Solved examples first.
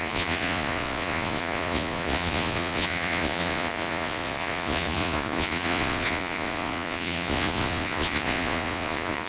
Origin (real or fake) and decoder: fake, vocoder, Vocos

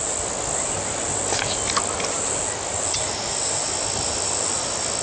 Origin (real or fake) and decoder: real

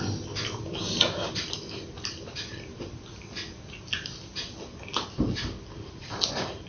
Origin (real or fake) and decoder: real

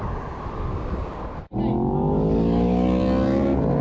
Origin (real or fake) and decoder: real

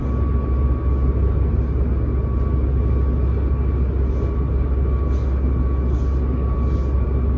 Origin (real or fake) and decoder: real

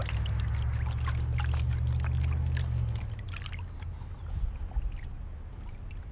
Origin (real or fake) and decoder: real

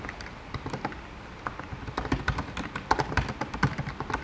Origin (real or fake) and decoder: real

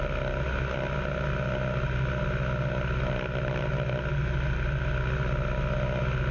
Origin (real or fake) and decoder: real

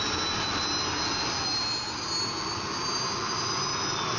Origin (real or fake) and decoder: real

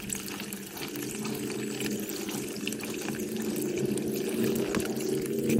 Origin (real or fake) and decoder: real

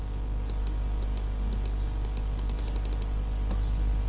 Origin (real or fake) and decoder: real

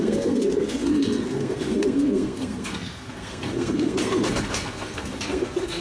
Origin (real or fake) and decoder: fake, codec, SNAC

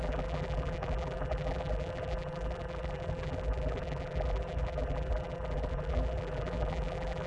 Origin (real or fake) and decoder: fake, vocoder, BigVGAN v2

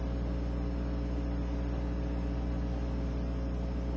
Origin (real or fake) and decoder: real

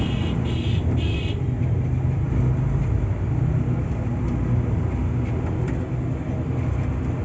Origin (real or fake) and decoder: real